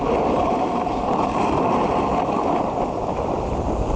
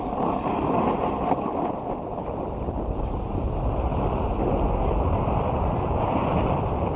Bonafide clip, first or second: second